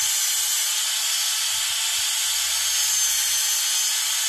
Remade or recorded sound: recorded